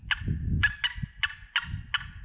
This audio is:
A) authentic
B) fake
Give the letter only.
A